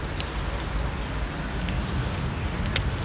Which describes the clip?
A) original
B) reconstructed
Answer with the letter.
A